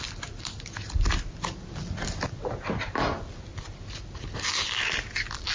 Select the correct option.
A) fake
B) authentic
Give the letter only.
B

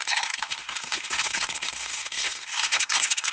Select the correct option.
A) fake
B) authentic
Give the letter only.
A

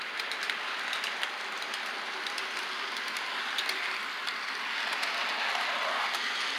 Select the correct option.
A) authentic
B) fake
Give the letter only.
A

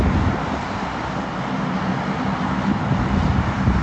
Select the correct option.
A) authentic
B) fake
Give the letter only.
A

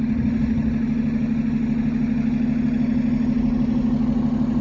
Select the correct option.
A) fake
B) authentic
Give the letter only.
B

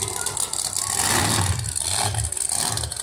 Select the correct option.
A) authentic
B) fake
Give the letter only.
A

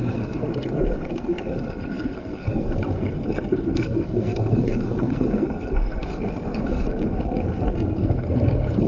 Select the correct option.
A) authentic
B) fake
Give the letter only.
B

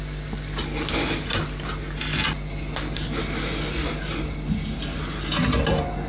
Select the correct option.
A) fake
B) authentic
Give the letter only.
B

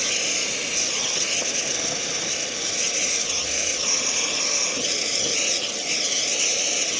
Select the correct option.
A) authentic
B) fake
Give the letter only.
A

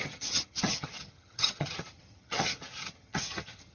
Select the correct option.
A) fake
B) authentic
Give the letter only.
A